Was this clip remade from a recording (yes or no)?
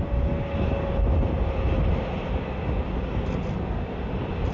no